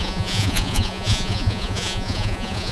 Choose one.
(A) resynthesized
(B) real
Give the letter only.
A